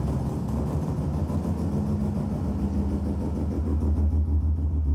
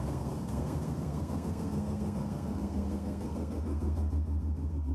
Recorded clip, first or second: first